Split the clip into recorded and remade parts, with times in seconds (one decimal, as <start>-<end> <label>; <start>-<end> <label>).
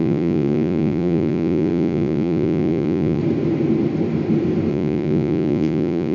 0.0-3.2 remade; 3.2-4.7 recorded; 4.7-6.1 remade